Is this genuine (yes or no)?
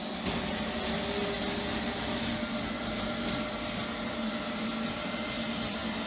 yes